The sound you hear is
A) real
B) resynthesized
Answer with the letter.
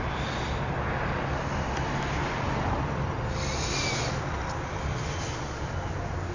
A